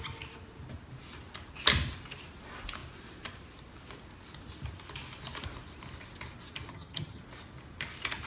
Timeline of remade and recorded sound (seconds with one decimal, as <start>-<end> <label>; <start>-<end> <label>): 0.0-6.7 recorded; 6.7-7.2 remade; 7.2-8.3 recorded